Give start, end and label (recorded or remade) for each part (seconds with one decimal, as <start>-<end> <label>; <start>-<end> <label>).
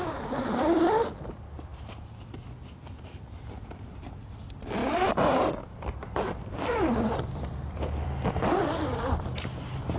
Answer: 0.0-1.7 remade; 1.7-4.2 recorded; 4.2-10.0 remade